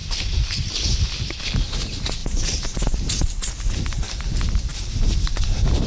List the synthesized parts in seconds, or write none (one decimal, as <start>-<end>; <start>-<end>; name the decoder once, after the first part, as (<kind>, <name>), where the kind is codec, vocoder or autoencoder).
0.0-0.7 (vocoder, BigVGAN v2); 2.2-3.5; 4.7-5.4